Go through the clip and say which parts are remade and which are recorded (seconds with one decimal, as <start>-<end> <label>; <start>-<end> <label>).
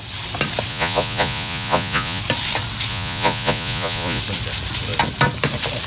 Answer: 0.0-0.7 recorded; 0.7-2.2 remade; 2.2-2.9 recorded; 2.9-4.2 remade; 4.2-5.9 recorded